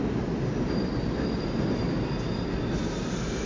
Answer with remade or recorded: recorded